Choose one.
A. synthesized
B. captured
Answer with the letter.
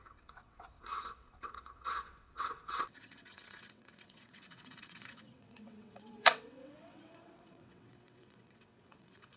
A